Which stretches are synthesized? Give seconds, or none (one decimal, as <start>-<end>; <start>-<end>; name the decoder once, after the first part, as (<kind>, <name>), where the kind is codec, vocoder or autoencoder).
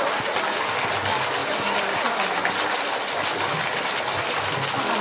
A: none